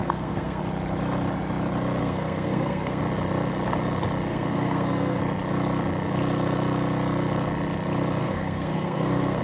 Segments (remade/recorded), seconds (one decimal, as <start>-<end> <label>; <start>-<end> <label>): 0.0-0.6 remade; 0.6-2.0 recorded; 2.0-3.0 remade; 3.0-4.3 recorded; 4.3-5.2 remade; 5.2-8.2 recorded; 8.2-9.4 remade